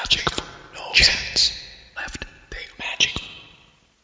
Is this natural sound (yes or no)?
yes